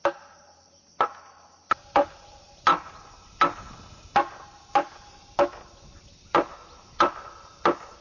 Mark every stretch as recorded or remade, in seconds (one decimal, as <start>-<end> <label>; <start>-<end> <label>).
0.0-8.0 recorded